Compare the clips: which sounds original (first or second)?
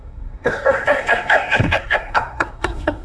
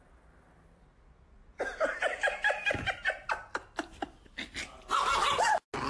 second